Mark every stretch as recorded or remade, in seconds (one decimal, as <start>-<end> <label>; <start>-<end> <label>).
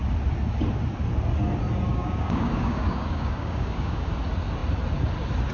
0.0-1.9 recorded; 1.9-4.1 remade; 4.1-5.5 recorded